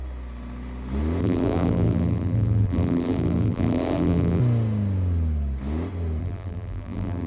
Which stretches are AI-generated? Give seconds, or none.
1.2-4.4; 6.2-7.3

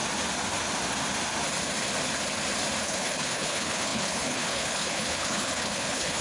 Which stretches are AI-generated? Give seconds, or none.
2.8-6.2